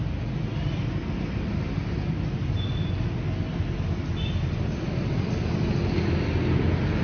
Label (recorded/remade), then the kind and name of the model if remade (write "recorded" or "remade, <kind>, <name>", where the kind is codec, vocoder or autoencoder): recorded